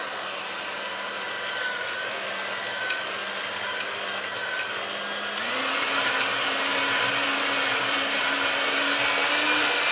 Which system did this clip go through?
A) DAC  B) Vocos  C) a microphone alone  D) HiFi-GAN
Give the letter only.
C